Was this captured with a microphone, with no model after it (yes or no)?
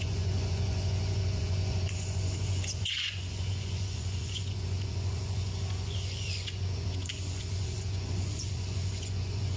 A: no